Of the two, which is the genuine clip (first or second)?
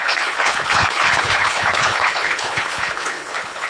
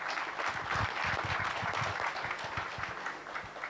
second